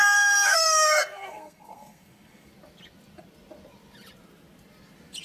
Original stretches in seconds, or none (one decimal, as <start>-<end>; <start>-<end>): 2.5-5.2